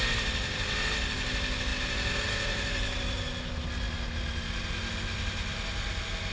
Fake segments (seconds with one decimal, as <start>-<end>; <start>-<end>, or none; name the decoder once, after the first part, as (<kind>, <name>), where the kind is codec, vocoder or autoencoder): none